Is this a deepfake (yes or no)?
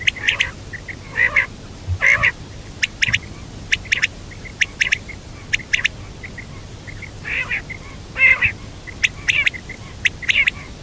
no